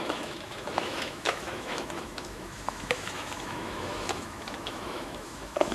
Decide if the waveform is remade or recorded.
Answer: remade